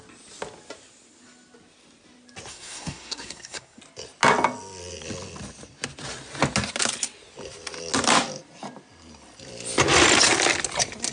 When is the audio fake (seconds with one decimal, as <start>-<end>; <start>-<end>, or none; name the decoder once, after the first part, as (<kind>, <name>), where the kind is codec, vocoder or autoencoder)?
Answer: 2.5-3.8 (codec, SNAC)